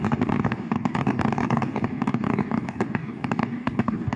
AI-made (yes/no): yes